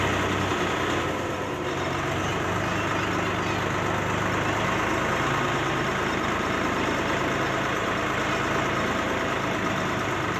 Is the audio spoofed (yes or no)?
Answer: no